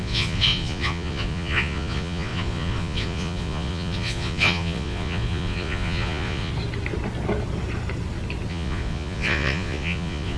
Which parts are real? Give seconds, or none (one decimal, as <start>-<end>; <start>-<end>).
6.5-8.5